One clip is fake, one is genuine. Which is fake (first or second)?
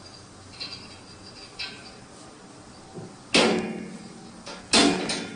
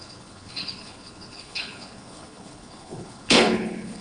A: second